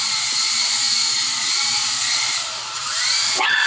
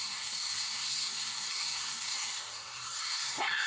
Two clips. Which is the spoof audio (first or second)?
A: second